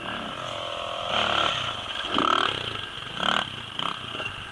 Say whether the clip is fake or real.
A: real